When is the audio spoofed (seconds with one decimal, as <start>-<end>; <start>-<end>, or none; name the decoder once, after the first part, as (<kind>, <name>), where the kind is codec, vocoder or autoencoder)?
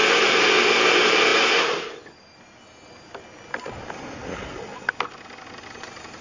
0.0-0.5 (vocoder, BigVGAN v2)